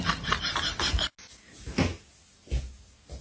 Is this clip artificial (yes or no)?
no